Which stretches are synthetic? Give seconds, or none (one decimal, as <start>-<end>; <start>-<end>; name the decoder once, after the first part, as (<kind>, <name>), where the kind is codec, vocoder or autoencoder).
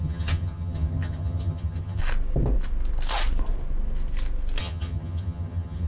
0.0-2.0 (vocoder, HiFi-GAN); 4.6-5.9